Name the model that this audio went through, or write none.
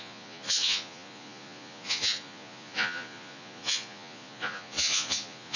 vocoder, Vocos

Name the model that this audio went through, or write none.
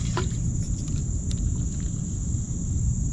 none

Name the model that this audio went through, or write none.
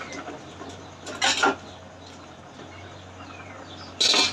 none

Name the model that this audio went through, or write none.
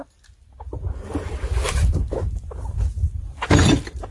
none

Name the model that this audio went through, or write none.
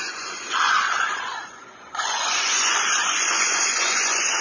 vocoder, Vocos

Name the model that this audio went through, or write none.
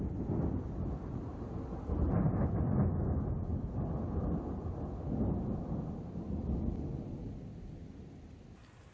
none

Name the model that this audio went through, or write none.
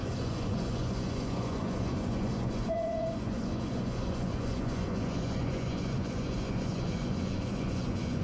vocoder, Vocos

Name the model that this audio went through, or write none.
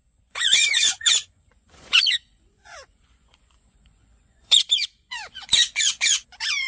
vocoder, Vocos